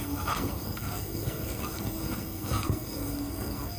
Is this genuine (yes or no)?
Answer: no